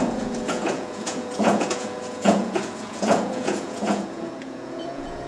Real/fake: fake